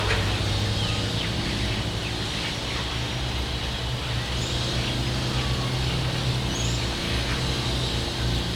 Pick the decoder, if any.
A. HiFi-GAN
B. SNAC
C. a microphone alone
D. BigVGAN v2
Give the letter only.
C